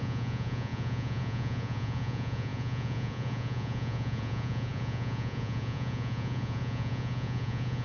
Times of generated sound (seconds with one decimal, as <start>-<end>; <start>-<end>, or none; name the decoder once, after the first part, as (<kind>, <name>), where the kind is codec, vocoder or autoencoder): 0.0-7.8 (vocoder, Vocos)

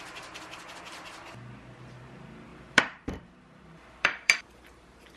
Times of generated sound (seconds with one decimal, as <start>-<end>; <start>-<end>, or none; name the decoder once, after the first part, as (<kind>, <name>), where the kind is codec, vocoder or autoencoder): 2.5-5.2 (vocoder, BigVGAN v2)

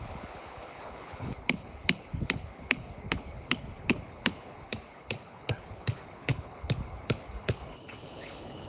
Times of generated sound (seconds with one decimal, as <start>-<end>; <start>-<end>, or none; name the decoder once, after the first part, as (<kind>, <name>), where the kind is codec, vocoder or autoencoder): 0.0-8.7 (codec, HILCodec)

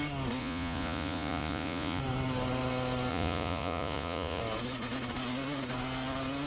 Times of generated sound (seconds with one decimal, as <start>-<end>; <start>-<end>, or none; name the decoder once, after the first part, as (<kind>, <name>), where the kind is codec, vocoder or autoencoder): 0.4-2.0 (vocoder, Vocos); 3.1-4.4